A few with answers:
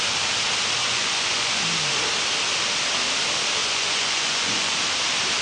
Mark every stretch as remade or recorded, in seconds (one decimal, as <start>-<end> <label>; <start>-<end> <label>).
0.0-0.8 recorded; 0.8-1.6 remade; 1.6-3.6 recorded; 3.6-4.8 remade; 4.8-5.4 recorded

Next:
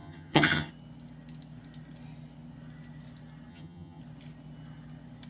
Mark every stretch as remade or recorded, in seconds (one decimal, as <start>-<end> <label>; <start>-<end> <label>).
0.0-0.7 remade; 0.7-3.5 recorded; 3.5-4.0 remade; 4.0-5.3 recorded

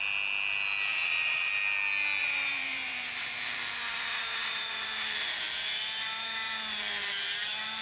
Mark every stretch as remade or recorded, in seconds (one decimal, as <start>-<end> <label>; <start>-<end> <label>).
0.0-0.9 recorded; 0.9-1.5 remade; 1.5-2.2 recorded; 2.2-3.4 remade; 3.4-3.9 recorded; 3.9-7.8 remade